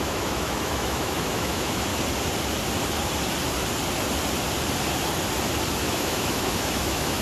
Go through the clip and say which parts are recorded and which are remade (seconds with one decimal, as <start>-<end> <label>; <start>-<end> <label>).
0.0-1.9 remade; 1.9-5.8 recorded; 5.8-7.2 remade